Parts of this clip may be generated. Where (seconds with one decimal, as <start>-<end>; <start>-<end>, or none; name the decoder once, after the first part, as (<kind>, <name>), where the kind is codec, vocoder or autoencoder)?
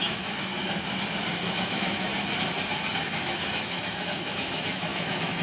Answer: 0.0-0.5 (autoencoder, DAC-VAE); 1.3-2.1; 2.9-5.4